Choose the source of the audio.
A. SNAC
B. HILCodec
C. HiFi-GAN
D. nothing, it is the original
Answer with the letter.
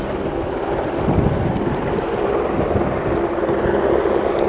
D